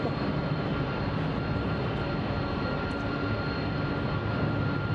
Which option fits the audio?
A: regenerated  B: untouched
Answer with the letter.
B